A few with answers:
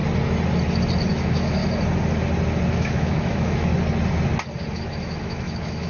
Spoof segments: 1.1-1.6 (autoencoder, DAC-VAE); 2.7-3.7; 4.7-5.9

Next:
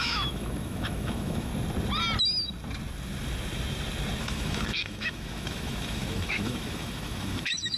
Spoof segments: 0.0-1.5 (autoencoder, DAC-VAE); 4.2-7.8

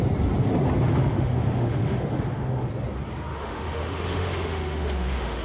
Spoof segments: 0.9-2.7 (autoencoder, DAC-VAE); 3.3-5.4

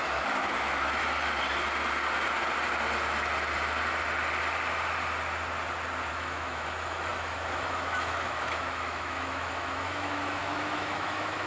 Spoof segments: 0.0-1.0 (autoencoder, DAC-VAE); 6.1-11.5